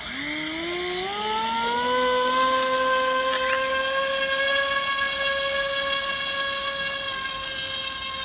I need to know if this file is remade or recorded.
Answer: recorded